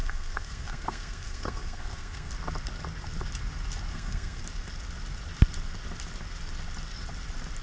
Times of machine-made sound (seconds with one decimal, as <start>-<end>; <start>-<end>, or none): 0.0-2.3; 3.9-4.4